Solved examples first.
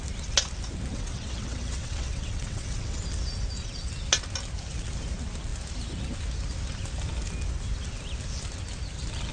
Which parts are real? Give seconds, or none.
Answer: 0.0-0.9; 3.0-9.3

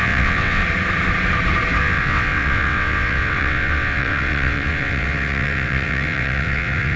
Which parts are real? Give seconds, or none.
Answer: 0.6-1.8